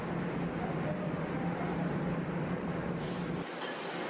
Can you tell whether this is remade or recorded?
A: recorded